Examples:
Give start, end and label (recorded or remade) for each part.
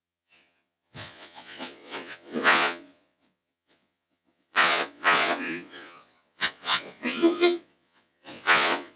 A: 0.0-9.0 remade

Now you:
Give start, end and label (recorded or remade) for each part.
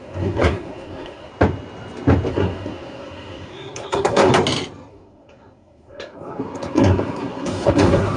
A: 0.0-1.3 remade; 1.3-2.3 recorded; 2.3-4.3 remade; 4.3-4.9 recorded; 4.9-8.2 remade